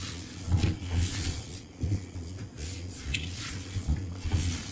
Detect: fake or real fake